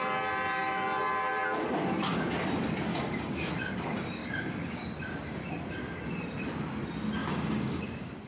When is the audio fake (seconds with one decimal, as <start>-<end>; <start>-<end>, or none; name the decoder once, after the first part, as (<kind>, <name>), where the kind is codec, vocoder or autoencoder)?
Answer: 2.9-3.5 (codec, DAC); 4.2-4.8; 7.2-7.8